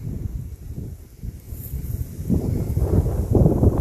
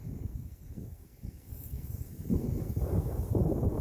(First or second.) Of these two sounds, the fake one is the second